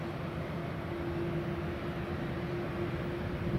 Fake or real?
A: real